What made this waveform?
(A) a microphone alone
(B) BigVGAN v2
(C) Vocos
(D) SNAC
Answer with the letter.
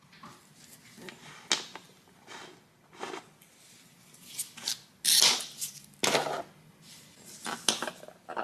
A